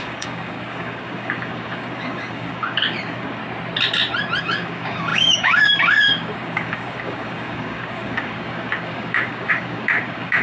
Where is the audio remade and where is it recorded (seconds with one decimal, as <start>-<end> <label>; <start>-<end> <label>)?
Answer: 0.0-3.4 remade; 3.4-4.4 recorded; 4.4-10.4 remade